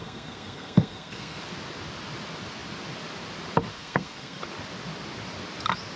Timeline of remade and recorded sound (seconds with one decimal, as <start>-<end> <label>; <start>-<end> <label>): 0.0-1.4 remade; 1.4-3.7 recorded; 3.7-4.4 remade; 4.4-6.0 recorded

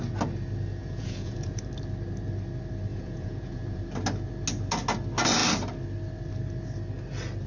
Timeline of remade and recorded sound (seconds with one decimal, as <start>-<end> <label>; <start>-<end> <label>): 0.0-0.8 recorded; 0.8-1.6 remade; 1.6-2.9 recorded; 2.9-3.8 remade; 3.8-7.5 recorded

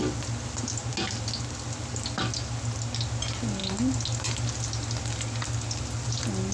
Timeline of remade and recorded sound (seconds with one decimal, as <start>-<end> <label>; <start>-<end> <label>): 0.0-6.5 recorded

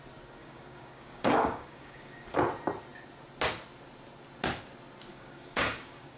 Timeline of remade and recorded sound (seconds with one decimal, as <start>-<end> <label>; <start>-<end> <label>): 0.0-0.4 recorded; 0.4-2.3 remade; 2.3-5.1 recorded; 5.1-6.2 remade